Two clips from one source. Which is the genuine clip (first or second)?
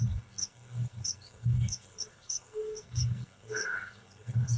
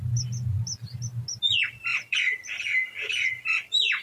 second